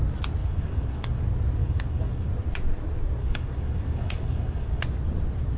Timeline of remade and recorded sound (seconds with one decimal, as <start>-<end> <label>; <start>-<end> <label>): 0.0-0.4 recorded; 0.4-1.2 remade; 1.2-1.6 recorded; 1.6-2.3 remade; 2.3-3.2 recorded; 3.2-4.8 remade; 4.8-5.6 recorded